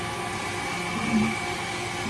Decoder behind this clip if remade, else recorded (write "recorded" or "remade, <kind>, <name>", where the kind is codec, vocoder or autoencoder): recorded